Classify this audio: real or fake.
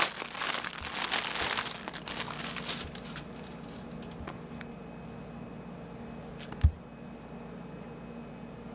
real